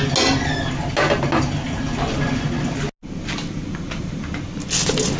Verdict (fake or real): real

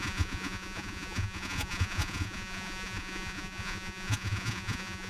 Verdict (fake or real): fake